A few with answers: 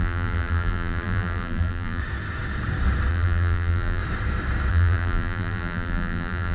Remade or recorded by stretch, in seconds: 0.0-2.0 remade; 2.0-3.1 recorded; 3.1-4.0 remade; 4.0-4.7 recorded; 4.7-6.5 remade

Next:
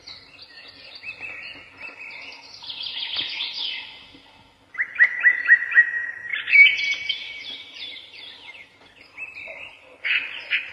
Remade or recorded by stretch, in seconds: 0.0-6.3 recorded; 6.3-10.7 remade